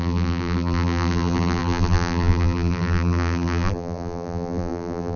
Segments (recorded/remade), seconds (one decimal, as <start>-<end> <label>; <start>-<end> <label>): 0.0-5.2 remade